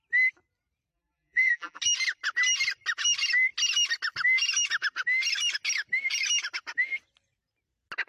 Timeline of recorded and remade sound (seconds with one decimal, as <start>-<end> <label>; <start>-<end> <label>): 0.0-0.9 recorded; 0.9-1.8 remade; 1.8-8.1 recorded